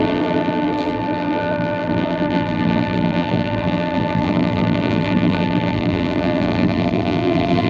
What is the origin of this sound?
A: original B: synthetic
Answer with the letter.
B